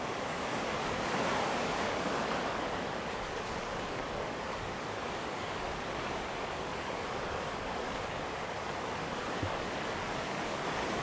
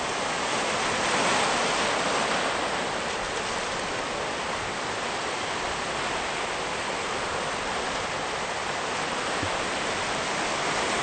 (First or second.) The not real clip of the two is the first